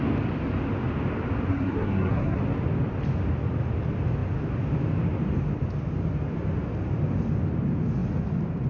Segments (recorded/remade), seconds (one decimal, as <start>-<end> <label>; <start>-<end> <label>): 0.0-1.5 recorded; 1.5-2.4 remade; 2.4-8.7 recorded